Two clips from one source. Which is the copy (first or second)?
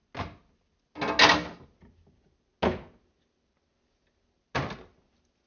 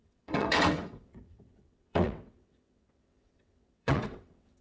second